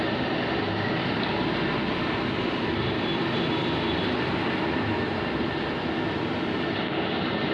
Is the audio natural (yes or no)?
yes